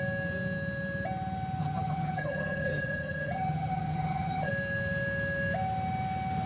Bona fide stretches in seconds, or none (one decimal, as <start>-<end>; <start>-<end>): 0.0-1.6; 4.5-6.5